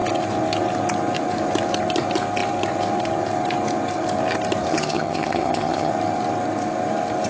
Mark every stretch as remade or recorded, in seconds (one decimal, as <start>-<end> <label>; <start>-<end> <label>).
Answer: 0.0-4.7 recorded; 4.7-5.9 remade; 5.9-7.3 recorded